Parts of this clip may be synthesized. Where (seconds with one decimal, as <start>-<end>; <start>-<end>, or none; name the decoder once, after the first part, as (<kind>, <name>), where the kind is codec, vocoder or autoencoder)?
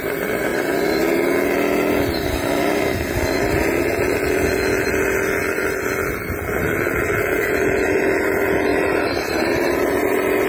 5.4-5.9 (vocoder, BigVGAN v2); 8.7-10.5